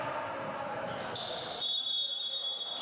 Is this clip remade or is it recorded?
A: recorded